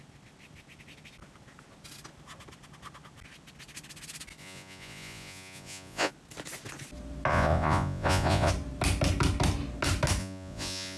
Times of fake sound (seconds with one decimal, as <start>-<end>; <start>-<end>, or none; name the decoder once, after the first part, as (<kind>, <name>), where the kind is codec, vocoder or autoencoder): 4.4-6.1 (vocoder, Vocos); 7.3-8.5; 10.2-11.0